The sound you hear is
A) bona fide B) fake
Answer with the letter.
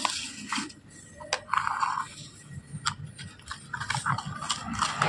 A